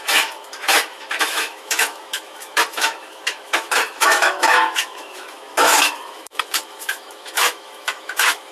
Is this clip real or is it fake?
fake